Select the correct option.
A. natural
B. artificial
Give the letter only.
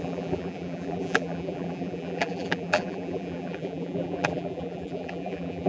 B